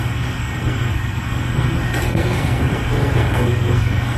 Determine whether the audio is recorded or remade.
remade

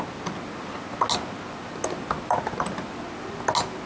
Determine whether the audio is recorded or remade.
recorded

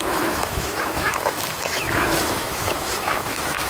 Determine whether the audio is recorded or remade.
remade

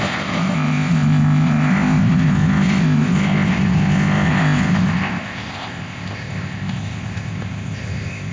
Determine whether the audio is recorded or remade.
remade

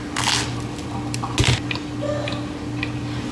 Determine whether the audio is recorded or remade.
recorded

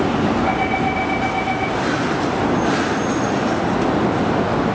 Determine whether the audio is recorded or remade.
recorded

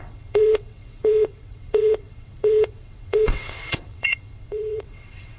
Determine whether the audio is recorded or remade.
remade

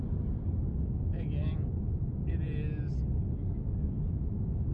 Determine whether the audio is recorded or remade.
remade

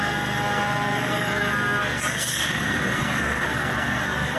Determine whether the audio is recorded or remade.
remade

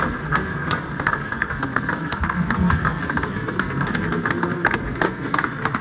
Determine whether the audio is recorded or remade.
remade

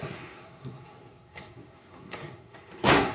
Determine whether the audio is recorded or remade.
remade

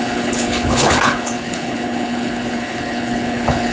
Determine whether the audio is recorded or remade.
remade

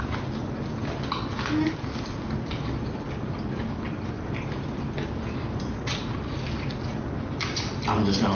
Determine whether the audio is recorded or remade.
recorded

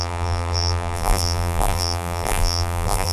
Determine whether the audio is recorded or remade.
remade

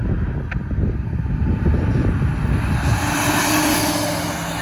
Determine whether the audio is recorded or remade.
recorded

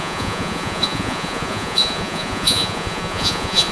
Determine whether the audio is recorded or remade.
remade